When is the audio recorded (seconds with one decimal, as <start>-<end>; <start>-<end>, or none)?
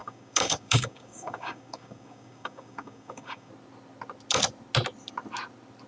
3.5-5.9